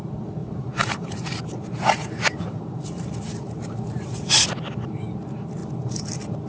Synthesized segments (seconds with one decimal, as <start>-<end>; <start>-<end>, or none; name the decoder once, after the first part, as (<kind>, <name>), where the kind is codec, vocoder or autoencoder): 0.4-4.3 (vocoder, BigVGAN v2); 5.6-6.5